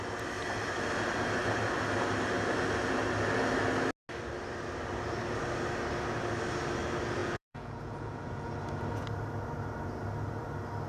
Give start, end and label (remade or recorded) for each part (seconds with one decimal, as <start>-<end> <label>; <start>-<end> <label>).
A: 0.0-7.2 recorded; 7.2-8.5 remade; 8.5-10.9 recorded